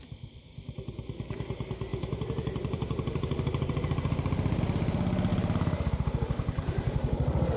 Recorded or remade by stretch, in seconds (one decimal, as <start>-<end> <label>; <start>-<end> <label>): 0.0-1.9 recorded; 1.9-4.6 remade; 4.6-5.3 recorded; 5.3-7.6 remade